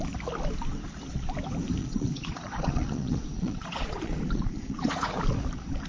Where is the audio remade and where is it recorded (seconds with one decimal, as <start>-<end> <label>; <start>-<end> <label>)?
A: 0.0-1.8 recorded; 1.8-5.2 remade; 5.2-5.9 recorded